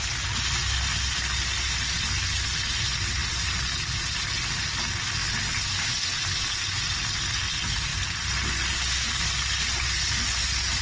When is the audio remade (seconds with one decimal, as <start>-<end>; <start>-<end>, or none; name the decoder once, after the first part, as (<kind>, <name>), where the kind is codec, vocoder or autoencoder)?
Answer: none